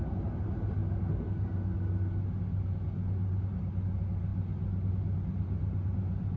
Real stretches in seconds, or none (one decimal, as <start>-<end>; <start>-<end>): 0.0-6.4